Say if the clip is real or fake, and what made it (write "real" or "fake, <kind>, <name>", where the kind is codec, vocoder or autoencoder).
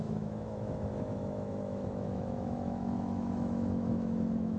fake, autoencoder, DAC-VAE